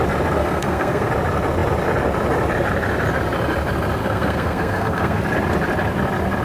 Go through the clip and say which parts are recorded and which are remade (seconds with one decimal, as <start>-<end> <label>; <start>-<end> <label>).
0.0-0.4 recorded; 0.4-1.1 remade; 1.1-4.0 recorded; 4.0-5.2 remade; 5.2-6.4 recorded